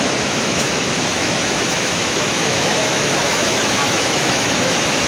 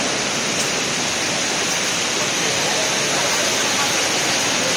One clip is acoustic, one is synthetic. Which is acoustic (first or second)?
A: second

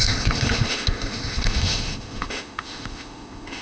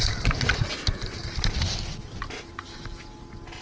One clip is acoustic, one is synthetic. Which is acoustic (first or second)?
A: second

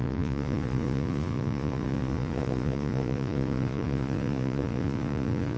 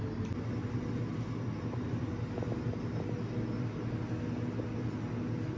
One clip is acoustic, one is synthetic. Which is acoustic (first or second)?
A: second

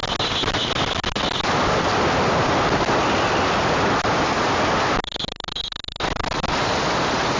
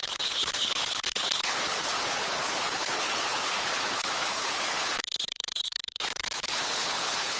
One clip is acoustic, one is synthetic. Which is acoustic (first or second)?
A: first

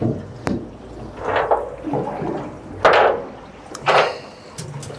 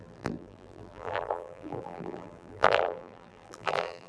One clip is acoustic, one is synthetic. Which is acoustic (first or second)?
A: first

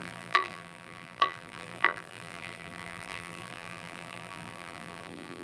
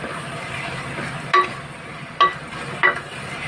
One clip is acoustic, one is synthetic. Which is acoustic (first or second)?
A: second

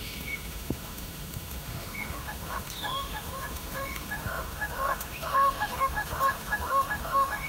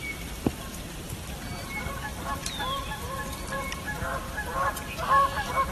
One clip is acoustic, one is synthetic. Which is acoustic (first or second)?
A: second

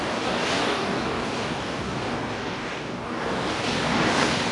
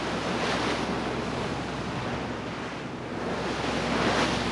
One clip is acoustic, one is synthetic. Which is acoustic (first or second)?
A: second